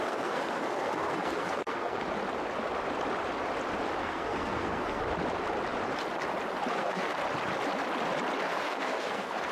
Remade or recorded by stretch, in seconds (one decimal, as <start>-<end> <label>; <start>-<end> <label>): 0.0-2.0 remade; 2.0-4.0 recorded; 4.0-5.0 remade; 5.0-6.7 recorded; 6.7-7.2 remade; 7.2-8.4 recorded; 8.4-9.5 remade